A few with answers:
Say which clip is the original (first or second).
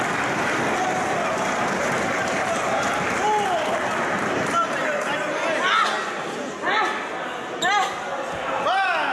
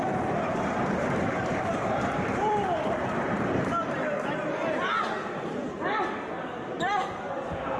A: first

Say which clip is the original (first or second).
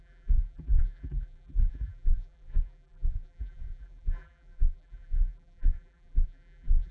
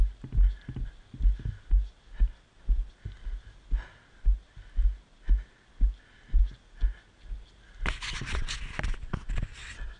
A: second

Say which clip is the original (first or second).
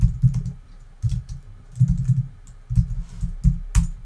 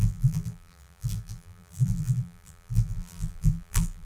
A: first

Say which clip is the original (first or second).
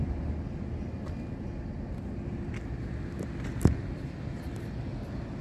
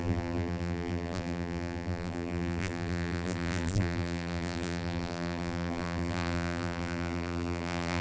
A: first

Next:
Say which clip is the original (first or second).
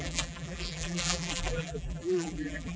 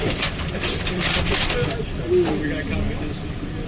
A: second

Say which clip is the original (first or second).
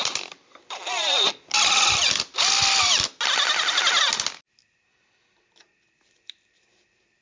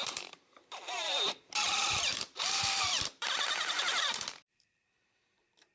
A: first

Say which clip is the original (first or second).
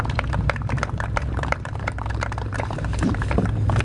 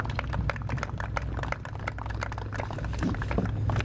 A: second